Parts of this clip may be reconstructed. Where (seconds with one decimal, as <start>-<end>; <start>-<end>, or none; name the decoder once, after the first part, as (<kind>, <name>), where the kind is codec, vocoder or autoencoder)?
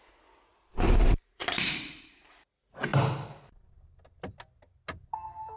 0.5-2.2 (vocoder, BigVGAN v2)